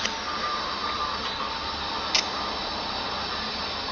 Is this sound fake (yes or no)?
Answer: no